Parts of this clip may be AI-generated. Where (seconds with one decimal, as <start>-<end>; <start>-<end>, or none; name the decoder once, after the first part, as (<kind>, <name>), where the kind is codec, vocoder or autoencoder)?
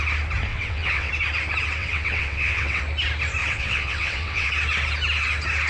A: 0.5-1.1 (vocoder, WaveNeXt); 1.8-2.8; 3.4-4.5